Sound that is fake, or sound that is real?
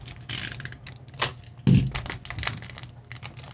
real